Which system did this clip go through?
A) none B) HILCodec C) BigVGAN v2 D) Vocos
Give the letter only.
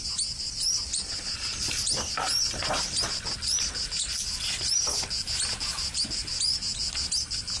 A